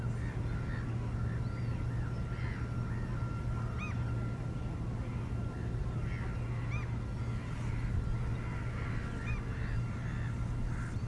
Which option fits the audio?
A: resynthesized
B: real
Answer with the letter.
B